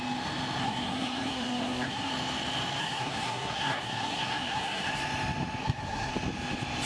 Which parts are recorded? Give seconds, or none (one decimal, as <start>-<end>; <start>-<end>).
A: 0.0-0.6; 2.1-2.8; 4.9-5.6; 6.1-6.9